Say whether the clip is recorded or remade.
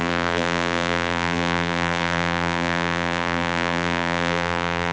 remade